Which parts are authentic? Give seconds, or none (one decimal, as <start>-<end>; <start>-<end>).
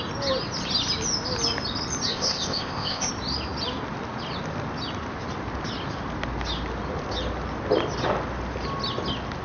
0.0-2.1; 3.1-9.4